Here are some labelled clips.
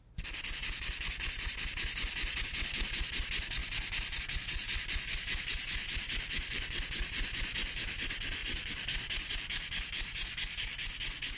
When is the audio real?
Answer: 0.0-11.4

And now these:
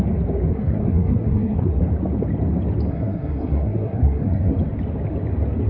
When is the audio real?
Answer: 0.0-0.5; 1.8-2.9; 4.6-5.7

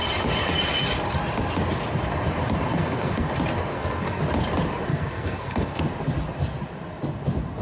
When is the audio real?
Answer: 0.0-2.7; 3.3-3.7; 4.2-4.9; 5.8-7.6

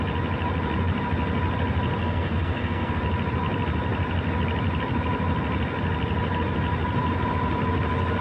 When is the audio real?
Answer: 0.0-2.0; 3.0-8.2

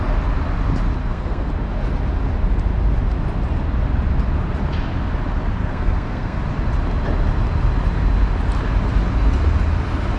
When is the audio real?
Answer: 0.0-1.0; 1.5-5.6; 6.4-10.2

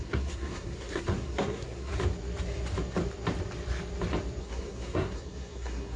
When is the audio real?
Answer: 1.9-4.4